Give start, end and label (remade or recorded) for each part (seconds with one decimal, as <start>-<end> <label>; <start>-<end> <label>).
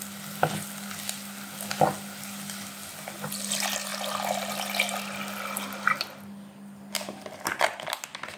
0.0-8.4 recorded